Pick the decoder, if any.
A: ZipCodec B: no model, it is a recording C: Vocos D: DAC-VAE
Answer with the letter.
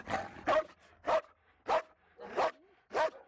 B